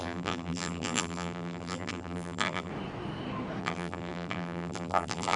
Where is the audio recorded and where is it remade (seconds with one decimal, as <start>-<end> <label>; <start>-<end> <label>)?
0.0-2.7 remade; 2.7-3.6 recorded; 3.6-5.4 remade